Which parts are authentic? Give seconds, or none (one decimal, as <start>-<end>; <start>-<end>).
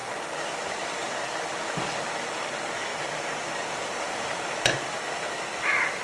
0.0-2.9; 4.4-6.0